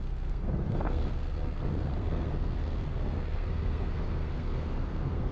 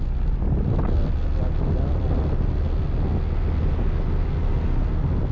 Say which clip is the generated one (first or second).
first